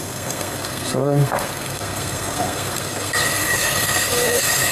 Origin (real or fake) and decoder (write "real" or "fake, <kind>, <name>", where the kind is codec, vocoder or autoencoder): fake, codec, SNAC